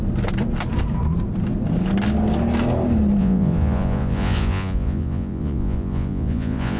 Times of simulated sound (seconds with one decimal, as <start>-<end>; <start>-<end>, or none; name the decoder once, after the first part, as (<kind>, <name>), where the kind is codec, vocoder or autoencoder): 3.2-6.8 (vocoder, Vocos)